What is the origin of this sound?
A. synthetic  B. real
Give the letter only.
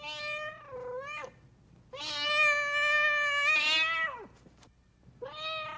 B